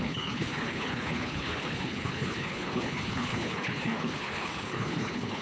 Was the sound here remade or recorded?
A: remade